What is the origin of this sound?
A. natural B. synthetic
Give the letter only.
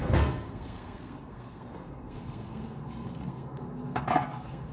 B